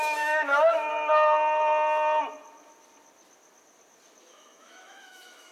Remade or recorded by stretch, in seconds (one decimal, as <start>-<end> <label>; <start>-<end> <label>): 0.0-0.9 remade; 0.9-4.2 recorded; 4.2-5.5 remade

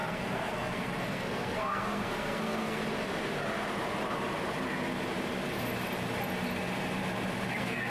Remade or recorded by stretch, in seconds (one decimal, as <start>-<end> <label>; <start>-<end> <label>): 0.0-2.8 remade; 2.8-7.5 recorded; 7.5-7.9 remade

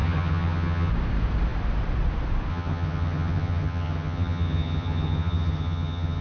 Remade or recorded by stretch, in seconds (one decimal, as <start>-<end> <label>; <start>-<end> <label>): 0.0-0.9 remade; 0.9-2.5 recorded; 2.5-6.2 remade

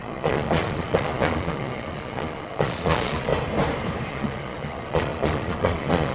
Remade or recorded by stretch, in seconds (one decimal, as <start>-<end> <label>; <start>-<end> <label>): 0.0-3.3 remade; 3.3-4.1 recorded; 4.1-6.1 remade